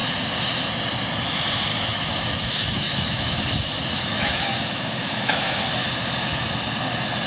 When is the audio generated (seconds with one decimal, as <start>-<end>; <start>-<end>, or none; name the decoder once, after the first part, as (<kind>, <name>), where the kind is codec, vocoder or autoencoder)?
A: 1.7-5.4 (autoencoder, DAC-VAE)